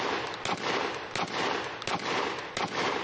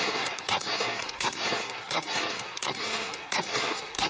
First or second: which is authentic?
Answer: first